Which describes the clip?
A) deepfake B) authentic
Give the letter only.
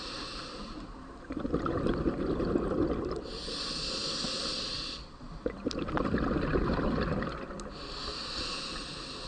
B